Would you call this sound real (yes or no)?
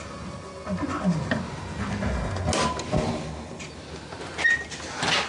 yes